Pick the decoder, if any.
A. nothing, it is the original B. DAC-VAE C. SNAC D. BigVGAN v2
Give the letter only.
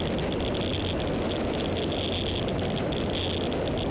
A